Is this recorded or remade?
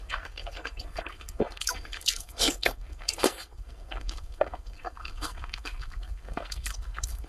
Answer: remade